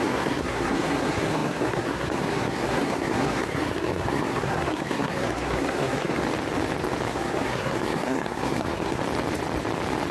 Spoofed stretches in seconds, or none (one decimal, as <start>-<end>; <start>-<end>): 0.0-6.2; 7.1-9.0